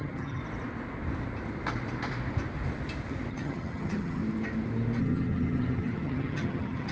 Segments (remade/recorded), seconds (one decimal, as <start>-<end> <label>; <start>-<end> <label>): 0.0-0.4 remade; 0.4-3.3 recorded; 3.3-4.2 remade; 4.2-5.0 recorded; 5.0-6.9 remade